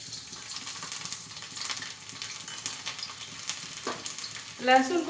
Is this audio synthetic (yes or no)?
no